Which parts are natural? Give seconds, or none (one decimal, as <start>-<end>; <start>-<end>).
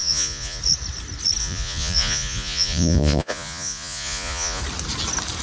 0.6-1.4; 4.6-5.4